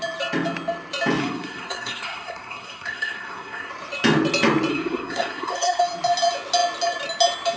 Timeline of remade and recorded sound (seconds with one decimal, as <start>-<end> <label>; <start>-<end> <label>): 0.0-1.2 recorded; 1.2-3.7 remade; 3.7-4.7 recorded; 4.7-5.8 remade; 5.8-7.6 recorded